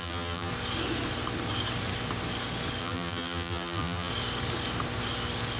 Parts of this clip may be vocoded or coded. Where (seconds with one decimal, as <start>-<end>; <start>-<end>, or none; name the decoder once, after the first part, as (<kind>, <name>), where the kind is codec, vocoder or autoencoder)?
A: 0.0-0.5 (vocoder, BigVGAN v2); 2.8-4.1